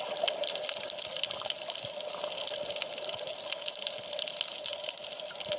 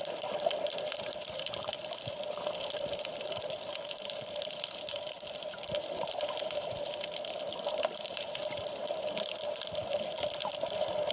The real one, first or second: first